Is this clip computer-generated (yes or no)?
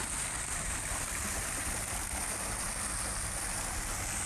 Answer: no